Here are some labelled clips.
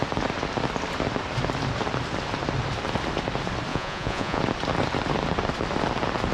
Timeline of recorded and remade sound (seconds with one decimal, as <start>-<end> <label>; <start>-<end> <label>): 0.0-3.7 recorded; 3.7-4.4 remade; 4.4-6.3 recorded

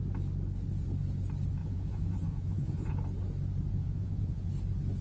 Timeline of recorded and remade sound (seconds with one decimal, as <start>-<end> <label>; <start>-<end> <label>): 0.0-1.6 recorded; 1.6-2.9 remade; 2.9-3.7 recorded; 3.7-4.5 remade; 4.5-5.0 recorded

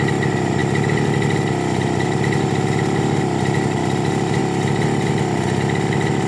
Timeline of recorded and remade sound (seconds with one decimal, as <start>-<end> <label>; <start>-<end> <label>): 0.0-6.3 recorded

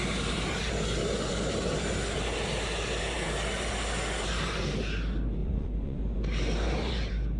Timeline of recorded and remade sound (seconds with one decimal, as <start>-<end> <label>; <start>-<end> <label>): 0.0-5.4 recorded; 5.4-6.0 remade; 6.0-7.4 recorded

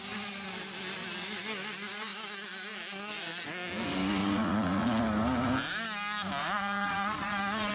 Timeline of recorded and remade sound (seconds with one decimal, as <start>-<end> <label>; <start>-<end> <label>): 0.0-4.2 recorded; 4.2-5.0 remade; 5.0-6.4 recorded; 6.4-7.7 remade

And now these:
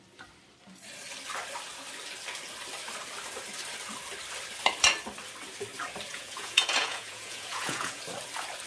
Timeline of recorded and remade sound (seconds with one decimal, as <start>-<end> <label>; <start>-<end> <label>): 0.0-6.1 recorded; 6.1-8.0 remade; 8.0-8.7 recorded

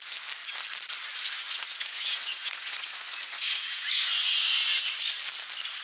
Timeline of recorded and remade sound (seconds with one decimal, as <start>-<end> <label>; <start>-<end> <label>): 0.0-1.4 recorded; 1.4-4.9 remade; 4.9-5.8 recorded